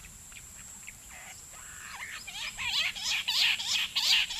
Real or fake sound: fake